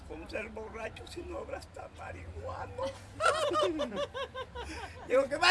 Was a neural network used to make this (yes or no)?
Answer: no